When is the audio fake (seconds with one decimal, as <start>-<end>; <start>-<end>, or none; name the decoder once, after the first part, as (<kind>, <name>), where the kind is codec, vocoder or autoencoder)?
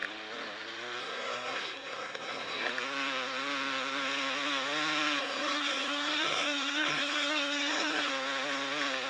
1.0-2.7 (codec, SNAC); 5.2-8.1